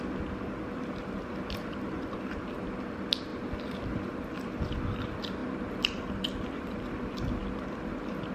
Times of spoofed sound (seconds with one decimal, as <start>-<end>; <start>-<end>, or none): 5.4-6.1; 7.4-7.9